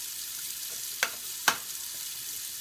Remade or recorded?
recorded